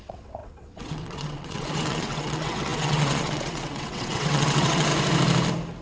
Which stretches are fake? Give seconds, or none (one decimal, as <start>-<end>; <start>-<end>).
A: 0.0-4.9